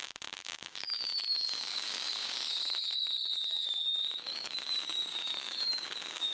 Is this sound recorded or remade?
remade